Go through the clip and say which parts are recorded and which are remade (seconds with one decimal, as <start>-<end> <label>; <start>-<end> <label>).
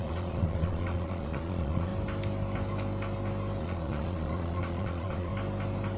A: 0.0-1.9 remade; 1.9-3.6 recorded; 3.6-5.3 remade; 5.3-6.0 recorded